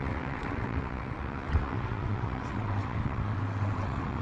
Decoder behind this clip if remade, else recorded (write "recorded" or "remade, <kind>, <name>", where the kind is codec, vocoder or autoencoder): remade, vocoder, WaveNeXt